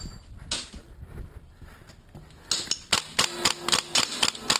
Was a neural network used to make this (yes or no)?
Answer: no